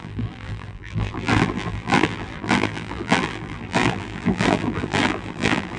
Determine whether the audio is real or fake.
fake